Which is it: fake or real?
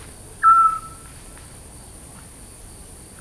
fake